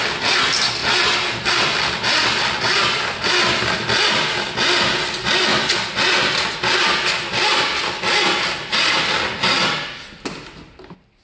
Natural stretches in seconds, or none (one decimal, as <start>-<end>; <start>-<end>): 0.0-11.2